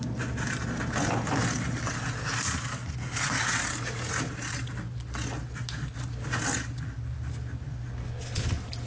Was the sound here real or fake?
real